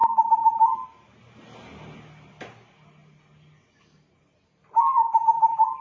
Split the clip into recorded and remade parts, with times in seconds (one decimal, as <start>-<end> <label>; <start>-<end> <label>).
0.0-5.8 recorded